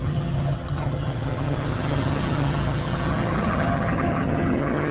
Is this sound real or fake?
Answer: fake